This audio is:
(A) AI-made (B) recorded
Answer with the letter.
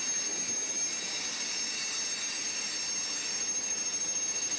B